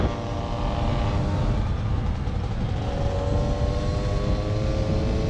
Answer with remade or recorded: recorded